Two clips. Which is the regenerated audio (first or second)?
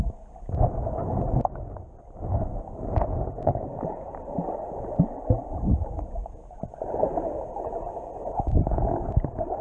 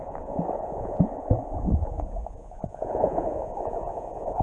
second